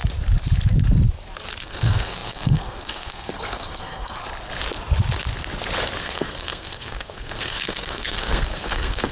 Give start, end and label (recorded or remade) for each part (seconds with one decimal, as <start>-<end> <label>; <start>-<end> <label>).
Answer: 0.0-1.6 recorded; 1.6-4.2 remade; 4.2-6.0 recorded; 6.0-9.1 remade